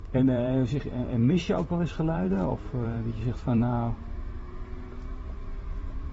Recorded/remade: remade